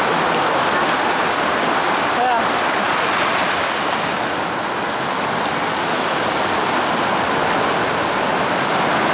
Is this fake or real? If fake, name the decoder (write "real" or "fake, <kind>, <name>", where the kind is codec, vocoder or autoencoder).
real